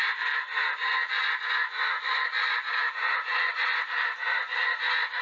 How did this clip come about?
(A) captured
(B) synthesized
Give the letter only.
B